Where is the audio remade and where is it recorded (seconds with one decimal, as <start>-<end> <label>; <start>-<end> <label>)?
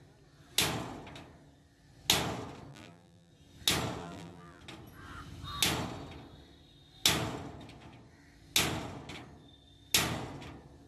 0.0-2.7 recorded; 2.7-3.3 remade; 3.3-4.0 recorded; 4.0-4.6 remade; 4.6-10.9 recorded